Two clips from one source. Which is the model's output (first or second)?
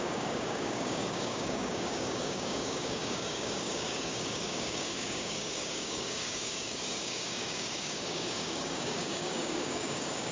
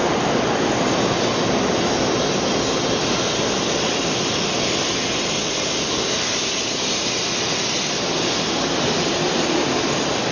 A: first